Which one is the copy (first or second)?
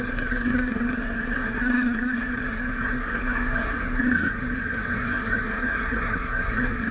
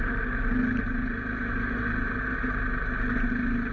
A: first